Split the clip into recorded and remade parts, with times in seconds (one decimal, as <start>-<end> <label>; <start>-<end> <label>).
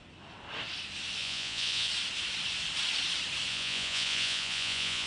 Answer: 0.0-1.2 recorded; 1.2-1.9 remade; 1.9-3.5 recorded; 3.5-5.1 remade